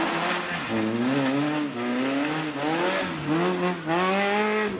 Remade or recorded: recorded